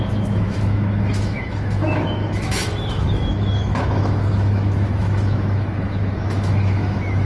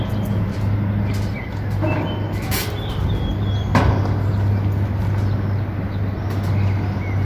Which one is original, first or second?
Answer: second